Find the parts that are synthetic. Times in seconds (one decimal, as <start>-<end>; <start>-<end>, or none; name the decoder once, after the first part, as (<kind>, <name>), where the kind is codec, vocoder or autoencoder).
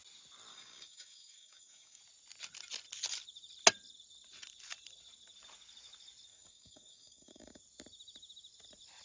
0.5-2.0 (codec, DAC); 6.3-7.6